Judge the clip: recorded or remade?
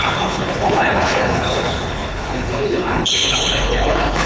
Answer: remade